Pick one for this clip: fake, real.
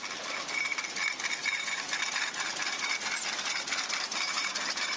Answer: real